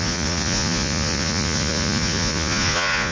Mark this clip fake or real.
fake